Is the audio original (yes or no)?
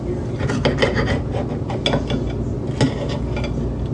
yes